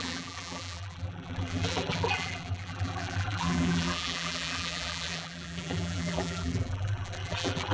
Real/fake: fake